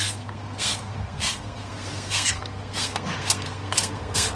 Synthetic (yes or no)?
yes